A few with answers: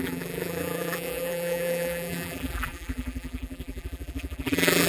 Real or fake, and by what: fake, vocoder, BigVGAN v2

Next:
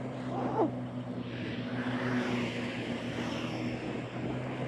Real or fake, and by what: real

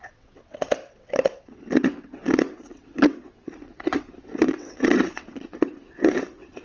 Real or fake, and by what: fake, vocoder, WaveNeXt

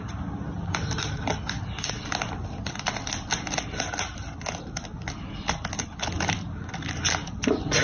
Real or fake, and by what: real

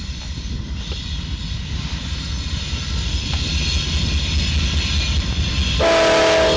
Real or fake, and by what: real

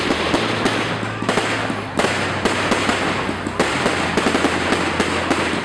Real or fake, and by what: real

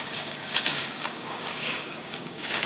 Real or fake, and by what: fake, codec, DAC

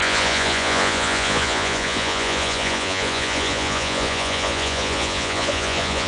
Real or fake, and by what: fake, vocoder, Vocos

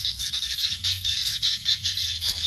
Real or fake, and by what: fake, codec, SNAC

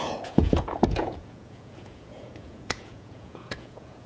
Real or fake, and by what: fake, vocoder, Vocos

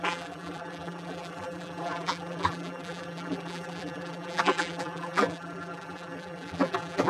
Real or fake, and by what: fake, vocoder, BigVGAN v2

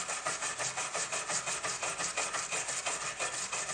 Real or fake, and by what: real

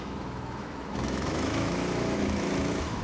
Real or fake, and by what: fake, autoencoder, DAC-VAE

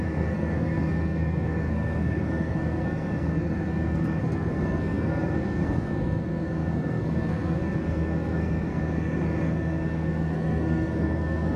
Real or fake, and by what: fake, codec, SNAC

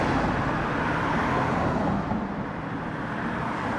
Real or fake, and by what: real